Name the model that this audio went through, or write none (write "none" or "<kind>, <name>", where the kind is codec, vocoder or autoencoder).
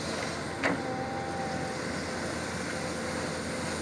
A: none